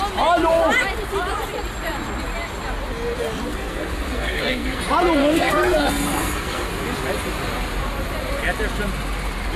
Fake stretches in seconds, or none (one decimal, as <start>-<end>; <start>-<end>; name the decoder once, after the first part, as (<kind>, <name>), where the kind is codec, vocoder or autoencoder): 3.5-4.8 (codec, SNAC); 5.2-6.7

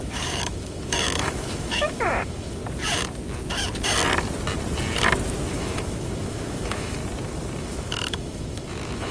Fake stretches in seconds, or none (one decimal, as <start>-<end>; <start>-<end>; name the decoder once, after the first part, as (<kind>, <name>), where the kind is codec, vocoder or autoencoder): 0.0-2.6 (autoencoder, DAC-VAE); 5.5-7.0; 7.6-9.1